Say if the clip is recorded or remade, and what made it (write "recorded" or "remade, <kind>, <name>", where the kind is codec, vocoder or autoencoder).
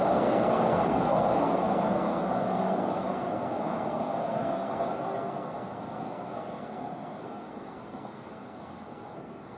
remade, codec, SNAC